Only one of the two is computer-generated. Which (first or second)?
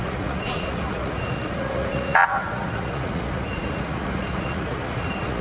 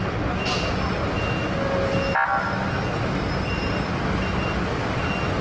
first